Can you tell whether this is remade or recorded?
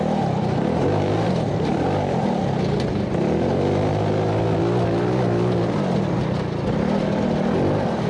recorded